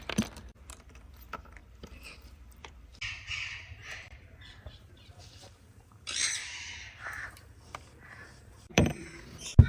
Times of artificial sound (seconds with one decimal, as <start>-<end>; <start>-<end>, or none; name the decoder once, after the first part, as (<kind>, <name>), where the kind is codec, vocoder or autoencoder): 1.6-2.2 (vocoder, BigVGAN v2); 3.9-9.1